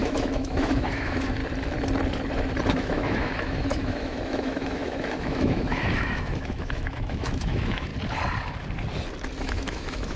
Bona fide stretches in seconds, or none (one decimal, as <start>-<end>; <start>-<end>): 1.4-2.7; 7.9-9.4